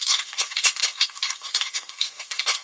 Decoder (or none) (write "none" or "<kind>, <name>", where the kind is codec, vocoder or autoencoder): codec, SNAC